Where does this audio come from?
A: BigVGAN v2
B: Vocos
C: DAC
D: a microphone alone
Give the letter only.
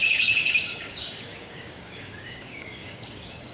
C